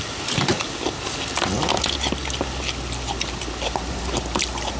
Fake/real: real